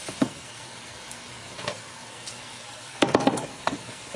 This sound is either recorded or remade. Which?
remade